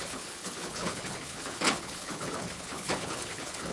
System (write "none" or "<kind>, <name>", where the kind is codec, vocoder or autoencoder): codec, HILCodec